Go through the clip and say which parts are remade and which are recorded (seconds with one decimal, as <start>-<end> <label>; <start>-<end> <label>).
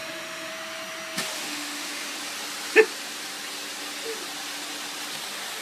0.0-0.5 remade; 0.5-1.4 recorded; 1.4-2.2 remade; 2.2-5.6 recorded